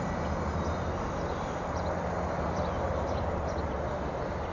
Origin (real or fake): real